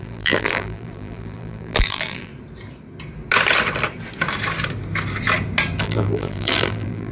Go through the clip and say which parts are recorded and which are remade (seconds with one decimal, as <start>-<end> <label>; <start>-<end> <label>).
0.0-2.3 remade; 2.3-5.8 recorded; 5.8-7.1 remade